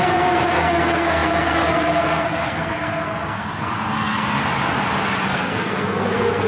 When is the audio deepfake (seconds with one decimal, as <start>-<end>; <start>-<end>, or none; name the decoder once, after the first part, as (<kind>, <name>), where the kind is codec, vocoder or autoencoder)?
0.0-4.4 (codec, SNAC); 5.3-6.5